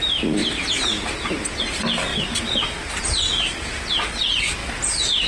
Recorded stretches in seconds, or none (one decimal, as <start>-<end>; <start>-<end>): 0.0-5.3